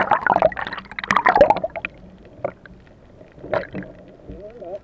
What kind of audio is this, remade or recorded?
recorded